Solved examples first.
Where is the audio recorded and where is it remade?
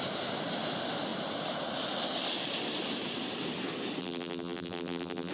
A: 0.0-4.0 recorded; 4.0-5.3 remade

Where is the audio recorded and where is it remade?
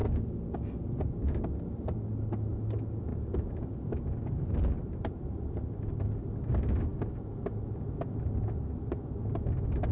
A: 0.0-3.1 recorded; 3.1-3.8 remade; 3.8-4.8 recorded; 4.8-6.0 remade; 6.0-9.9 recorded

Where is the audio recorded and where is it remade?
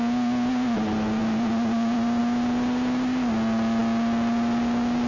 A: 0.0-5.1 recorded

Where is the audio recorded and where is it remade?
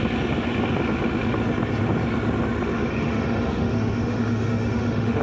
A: 0.0-2.9 recorded; 2.9-5.2 remade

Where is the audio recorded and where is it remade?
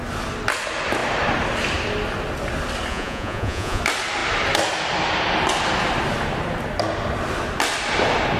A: 0.0-2.9 recorded; 2.9-3.8 remade; 3.8-8.4 recorded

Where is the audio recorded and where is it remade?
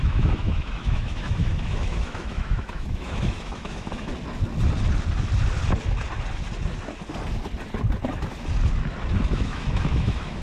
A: 0.0-4.1 remade; 4.1-9.3 recorded; 9.3-10.4 remade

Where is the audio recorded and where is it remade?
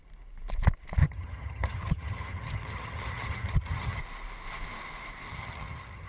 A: 0.0-1.0 recorded; 1.0-4.0 remade; 4.0-5.3 recorded; 5.3-6.1 remade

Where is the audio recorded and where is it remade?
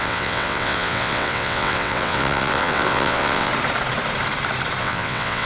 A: 0.0-3.5 remade; 3.5-4.8 recorded; 4.8-5.4 remade